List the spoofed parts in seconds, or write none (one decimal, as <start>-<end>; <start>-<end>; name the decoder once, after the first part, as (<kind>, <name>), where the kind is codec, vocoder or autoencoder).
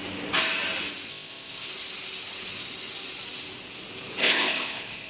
1.1-1.7 (codec, ZipCodec); 4.2-5.1